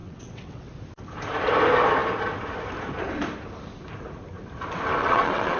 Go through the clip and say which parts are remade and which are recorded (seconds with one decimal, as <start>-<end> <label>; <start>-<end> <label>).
0.0-0.7 remade; 0.7-5.0 recorded; 5.0-5.6 remade

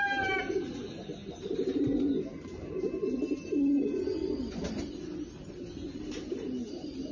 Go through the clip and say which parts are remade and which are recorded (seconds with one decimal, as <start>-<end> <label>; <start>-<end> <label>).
0.0-7.1 recorded

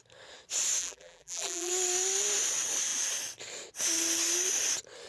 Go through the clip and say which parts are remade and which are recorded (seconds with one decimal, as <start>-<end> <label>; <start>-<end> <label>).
0.0-0.8 recorded; 0.8-1.7 remade; 1.7-5.1 recorded

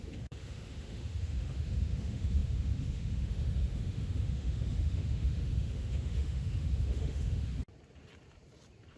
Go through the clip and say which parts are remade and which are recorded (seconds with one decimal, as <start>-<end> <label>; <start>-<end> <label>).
0.0-7.5 remade; 7.5-9.0 recorded

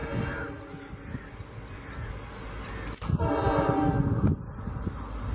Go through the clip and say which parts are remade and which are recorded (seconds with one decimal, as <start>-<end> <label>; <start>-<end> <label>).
0.0-5.3 recorded

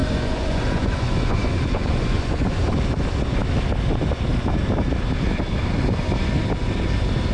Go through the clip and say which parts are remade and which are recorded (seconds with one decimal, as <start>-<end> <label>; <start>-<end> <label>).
0.0-2.6 remade; 2.6-7.3 recorded

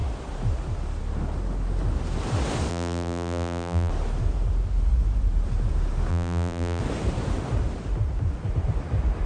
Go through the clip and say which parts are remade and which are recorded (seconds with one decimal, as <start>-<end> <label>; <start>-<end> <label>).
0.0-2.7 recorded; 2.7-3.9 remade; 3.9-6.1 recorded; 6.1-6.8 remade; 6.8-9.3 recorded

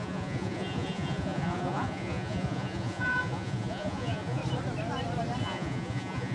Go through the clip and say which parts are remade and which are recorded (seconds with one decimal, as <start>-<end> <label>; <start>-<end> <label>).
0.0-4.4 remade; 4.4-5.4 recorded; 5.4-6.3 remade